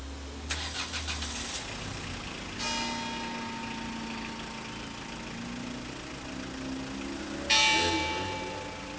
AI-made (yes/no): no